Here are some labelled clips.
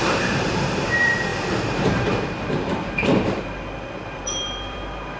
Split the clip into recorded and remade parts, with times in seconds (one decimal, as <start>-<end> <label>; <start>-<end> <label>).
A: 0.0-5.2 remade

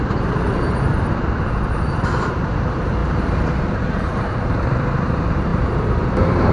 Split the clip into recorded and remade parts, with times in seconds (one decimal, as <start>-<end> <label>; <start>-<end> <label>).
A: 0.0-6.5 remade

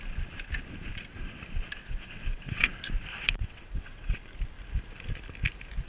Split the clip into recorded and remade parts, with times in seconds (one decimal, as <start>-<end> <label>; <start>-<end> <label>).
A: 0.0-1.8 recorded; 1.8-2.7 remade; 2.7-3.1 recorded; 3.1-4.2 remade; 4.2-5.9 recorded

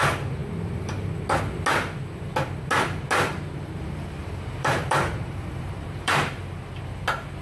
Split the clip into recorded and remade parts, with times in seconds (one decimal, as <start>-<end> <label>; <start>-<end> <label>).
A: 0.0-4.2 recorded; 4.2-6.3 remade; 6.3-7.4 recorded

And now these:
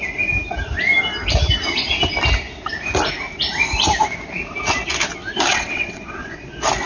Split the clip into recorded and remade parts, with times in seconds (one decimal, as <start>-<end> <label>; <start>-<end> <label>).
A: 0.0-5.5 recorded; 5.5-6.5 remade; 6.5-6.9 recorded